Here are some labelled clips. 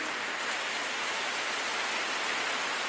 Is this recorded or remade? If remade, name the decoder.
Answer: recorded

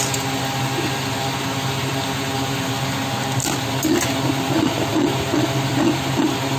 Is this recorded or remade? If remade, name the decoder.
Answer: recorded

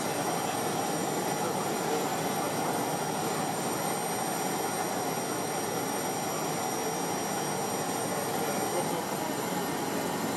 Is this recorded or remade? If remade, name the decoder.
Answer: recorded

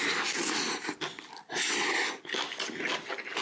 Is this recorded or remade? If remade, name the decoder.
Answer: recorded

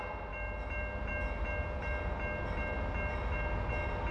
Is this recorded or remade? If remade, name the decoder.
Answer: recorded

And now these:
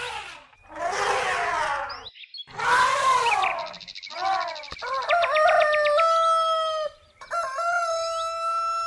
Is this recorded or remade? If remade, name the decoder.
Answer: recorded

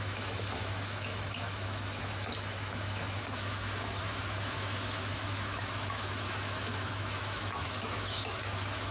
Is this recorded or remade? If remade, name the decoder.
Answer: remade, autoencoder, DAC-VAE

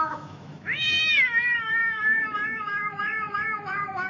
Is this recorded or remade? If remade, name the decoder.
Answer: remade, autoencoder, DAC-VAE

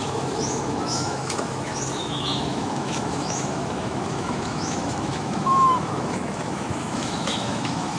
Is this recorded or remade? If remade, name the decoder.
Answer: remade, autoencoder, DAC-VAE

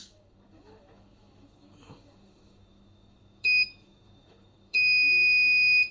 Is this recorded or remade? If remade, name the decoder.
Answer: remade, autoencoder, DAC-VAE